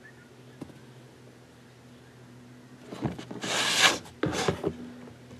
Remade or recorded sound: recorded